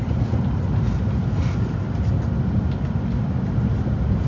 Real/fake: real